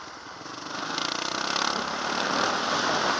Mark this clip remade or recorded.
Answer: recorded